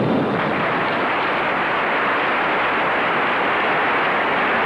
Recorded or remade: recorded